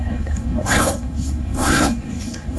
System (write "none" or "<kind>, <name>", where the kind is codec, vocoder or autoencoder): codec, SNAC